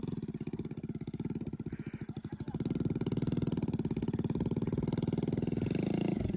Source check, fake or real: real